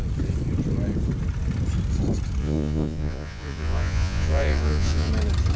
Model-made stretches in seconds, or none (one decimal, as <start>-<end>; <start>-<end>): 2.4-5.1